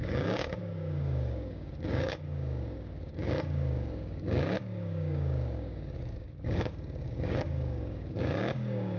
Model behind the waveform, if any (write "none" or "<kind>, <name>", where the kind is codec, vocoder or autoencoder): codec, DAC